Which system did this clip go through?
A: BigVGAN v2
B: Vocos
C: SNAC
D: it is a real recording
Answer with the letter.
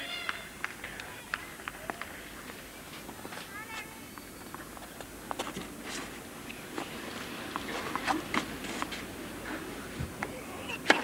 D